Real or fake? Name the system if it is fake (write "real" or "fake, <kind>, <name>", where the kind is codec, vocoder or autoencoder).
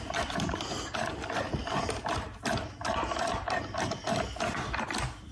real